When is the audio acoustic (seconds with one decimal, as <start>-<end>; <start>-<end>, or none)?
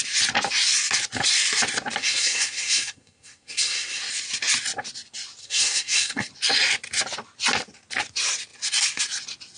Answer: 0.0-2.0; 4.0-5.4; 6.3-9.6